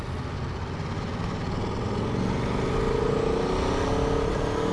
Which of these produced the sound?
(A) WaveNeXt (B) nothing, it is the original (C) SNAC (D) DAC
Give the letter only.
B